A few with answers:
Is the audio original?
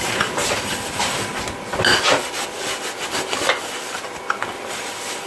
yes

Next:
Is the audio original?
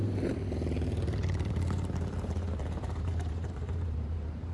no